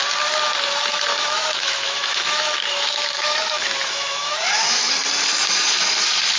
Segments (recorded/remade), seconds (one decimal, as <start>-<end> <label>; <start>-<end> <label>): 0.0-1.1 recorded; 1.1-4.9 remade; 4.9-6.4 recorded